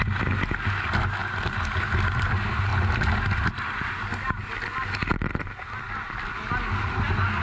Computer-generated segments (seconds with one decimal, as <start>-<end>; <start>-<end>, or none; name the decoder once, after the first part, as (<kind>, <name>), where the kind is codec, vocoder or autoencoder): none